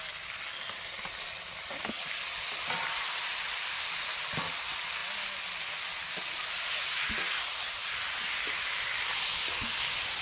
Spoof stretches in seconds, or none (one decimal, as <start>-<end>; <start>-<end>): none